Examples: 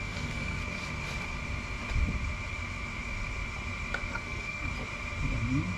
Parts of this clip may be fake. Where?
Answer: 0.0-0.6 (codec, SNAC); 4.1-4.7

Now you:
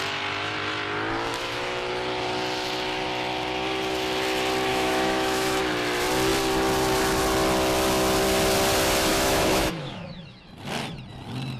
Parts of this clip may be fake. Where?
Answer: 1.3-1.9 (autoencoder, DAC-VAE); 4.7-5.6; 9.1-10.5